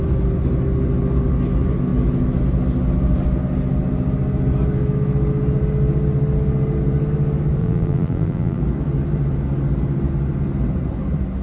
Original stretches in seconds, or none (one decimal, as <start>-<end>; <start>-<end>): 0.0-7.6; 8.6-11.4